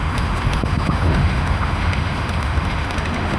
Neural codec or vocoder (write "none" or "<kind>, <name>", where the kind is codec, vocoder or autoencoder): autoencoder, DAC-VAE